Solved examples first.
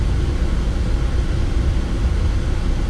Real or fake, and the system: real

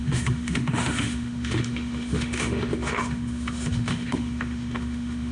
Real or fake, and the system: fake, autoencoder, DAC-VAE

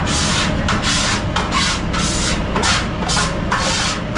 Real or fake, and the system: real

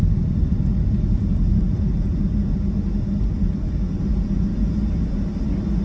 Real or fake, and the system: real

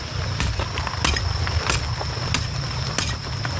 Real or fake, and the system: real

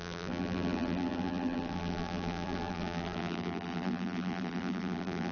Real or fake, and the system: fake, vocoder, BigVGAN v2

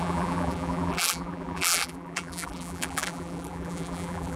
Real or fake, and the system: fake, vocoder, BigVGAN v2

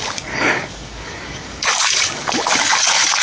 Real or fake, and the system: fake, codec, DAC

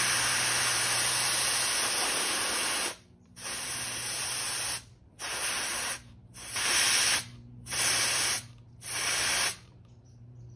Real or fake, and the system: fake, vocoder, BigVGAN v2